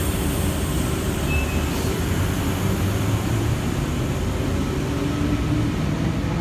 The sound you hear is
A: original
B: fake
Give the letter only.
A